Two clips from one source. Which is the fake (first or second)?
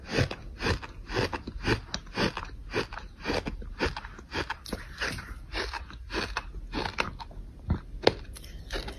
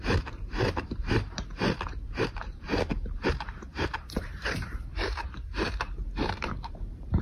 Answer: second